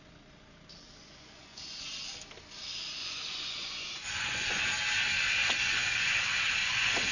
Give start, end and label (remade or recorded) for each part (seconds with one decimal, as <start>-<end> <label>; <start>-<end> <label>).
0.0-1.0 recorded; 1.0-1.8 remade; 1.8-3.0 recorded; 3.0-4.6 remade; 4.6-5.4 recorded; 5.4-6.1 remade; 6.1-6.6 recorded; 6.6-7.1 remade

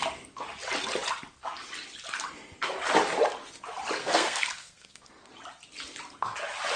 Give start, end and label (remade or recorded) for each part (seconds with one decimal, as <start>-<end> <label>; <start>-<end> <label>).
0.0-4.0 recorded; 4.0-5.1 remade; 5.1-6.8 recorded

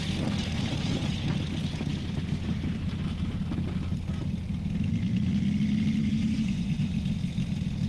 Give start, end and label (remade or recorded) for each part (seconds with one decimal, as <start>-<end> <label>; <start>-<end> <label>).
0.0-6.0 recorded; 6.0-6.9 remade; 6.9-7.9 recorded

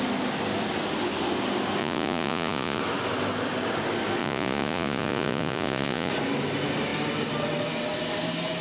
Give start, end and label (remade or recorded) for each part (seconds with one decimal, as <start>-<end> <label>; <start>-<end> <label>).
0.0-1.8 recorded; 1.8-2.8 remade; 2.8-4.2 recorded; 4.2-6.1 remade; 6.1-8.6 recorded

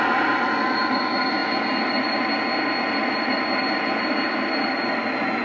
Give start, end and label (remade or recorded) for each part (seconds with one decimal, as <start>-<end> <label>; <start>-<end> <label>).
0.0-5.4 recorded

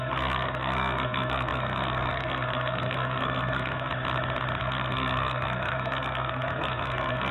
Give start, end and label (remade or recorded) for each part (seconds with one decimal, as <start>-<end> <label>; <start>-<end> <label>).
0.0-3.9 remade; 3.9-4.6 recorded; 4.6-7.3 remade

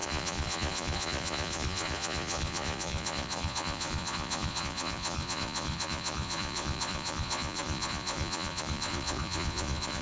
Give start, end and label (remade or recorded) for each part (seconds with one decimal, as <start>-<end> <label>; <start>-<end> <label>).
0.0-10.0 remade